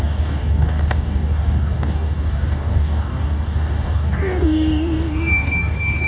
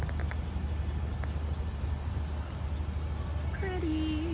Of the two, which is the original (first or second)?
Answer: second